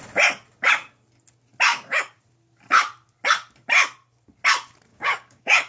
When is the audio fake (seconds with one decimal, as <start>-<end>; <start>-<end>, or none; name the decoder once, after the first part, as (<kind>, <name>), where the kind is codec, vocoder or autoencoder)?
1.7-2.2 (codec, DAC); 4.9-5.7